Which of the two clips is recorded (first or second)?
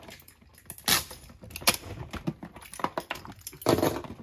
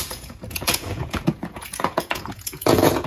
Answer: first